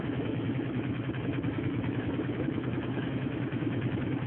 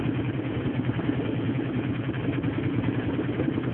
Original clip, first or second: second